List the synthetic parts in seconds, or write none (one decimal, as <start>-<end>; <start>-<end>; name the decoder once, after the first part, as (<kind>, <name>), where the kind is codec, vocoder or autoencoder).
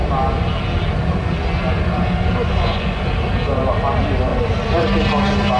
2.5-3.0 (vocoder, Vocos)